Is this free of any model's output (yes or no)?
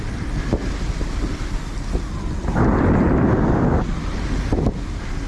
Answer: yes